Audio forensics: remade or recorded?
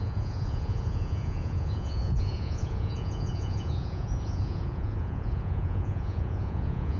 remade